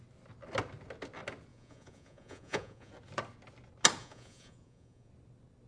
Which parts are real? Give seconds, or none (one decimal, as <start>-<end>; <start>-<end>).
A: 0.0-1.5; 2.9-4.0; 5.1-5.7

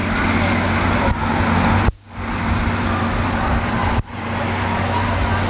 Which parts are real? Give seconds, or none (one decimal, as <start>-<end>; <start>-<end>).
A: 0.0-5.5

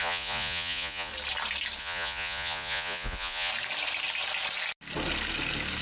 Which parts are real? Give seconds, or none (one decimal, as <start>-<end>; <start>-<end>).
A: 1.1-1.8; 3.5-5.8

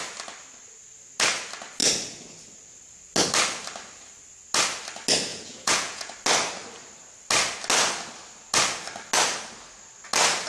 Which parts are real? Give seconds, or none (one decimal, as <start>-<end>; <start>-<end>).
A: 0.0-5.3; 6.1-10.5

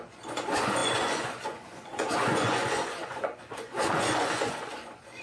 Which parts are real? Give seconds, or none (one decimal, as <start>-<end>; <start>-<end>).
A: none